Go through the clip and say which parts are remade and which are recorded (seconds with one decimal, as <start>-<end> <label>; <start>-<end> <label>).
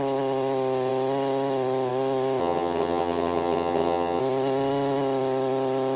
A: 0.0-2.4 recorded; 2.4-4.2 remade; 4.2-6.0 recorded